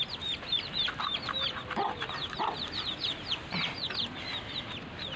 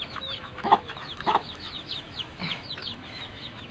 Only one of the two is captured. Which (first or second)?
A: first